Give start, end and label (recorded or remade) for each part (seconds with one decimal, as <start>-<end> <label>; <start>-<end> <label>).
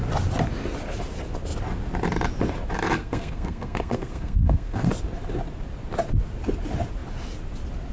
0.0-3.0 recorded; 3.0-4.9 remade; 4.9-7.9 recorded